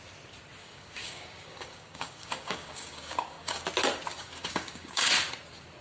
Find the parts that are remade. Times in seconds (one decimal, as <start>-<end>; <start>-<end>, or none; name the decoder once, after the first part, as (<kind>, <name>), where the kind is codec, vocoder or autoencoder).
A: 0.6-3.6 (codec, DAC); 4.1-5.1